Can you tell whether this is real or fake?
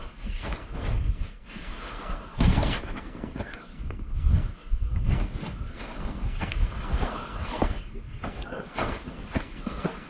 fake